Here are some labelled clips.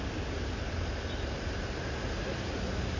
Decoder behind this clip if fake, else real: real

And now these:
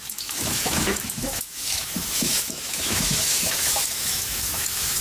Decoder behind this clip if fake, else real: fake, autoencoder, DAC-VAE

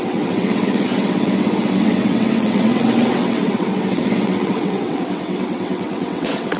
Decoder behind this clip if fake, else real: fake, vocoder, WaveNeXt